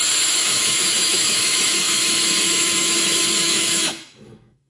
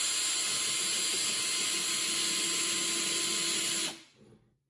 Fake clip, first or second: first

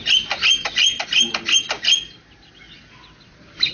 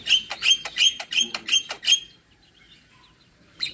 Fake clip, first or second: second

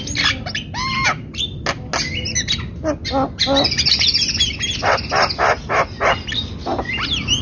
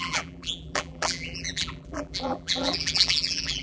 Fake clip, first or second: second